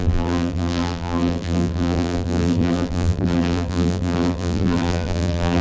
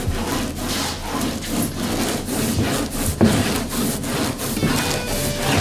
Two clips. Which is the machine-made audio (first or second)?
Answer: first